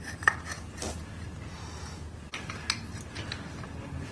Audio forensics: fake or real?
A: real